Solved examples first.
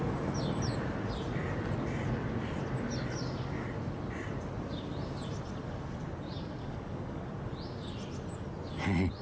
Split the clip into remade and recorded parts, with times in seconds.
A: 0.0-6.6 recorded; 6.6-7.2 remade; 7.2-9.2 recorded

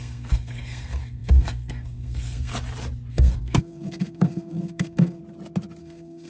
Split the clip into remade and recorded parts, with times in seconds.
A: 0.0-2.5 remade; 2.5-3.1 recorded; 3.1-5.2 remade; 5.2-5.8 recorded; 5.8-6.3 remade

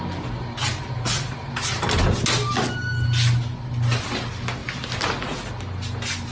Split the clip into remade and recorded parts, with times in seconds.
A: 0.0-6.3 recorded